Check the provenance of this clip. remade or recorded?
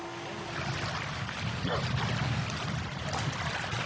recorded